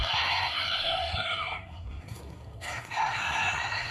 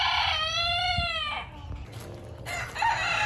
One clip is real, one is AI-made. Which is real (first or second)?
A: second